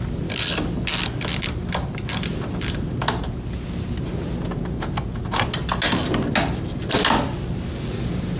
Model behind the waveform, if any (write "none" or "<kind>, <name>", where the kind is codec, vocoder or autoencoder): none